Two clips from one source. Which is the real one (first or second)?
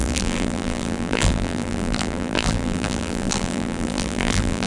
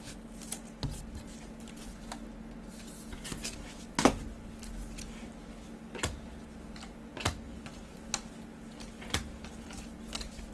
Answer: second